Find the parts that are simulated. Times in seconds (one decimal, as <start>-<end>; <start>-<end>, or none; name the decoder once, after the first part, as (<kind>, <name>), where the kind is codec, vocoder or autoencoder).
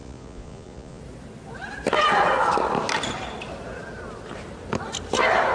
0.0-1.0 (vocoder, Vocos)